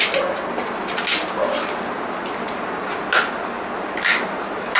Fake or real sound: real